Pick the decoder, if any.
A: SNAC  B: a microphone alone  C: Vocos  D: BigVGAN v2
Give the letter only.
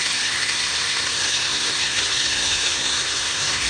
A